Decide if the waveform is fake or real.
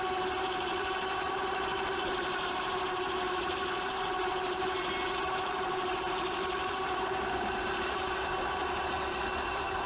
fake